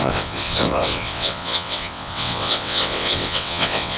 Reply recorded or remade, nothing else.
remade